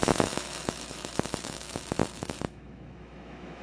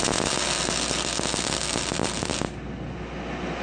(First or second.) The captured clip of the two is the second